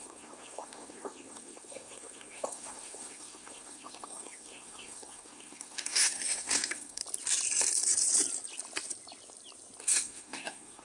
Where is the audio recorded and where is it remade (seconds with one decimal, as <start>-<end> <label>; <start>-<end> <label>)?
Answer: 0.0-7.0 remade; 7.0-9.8 recorded; 9.8-10.8 remade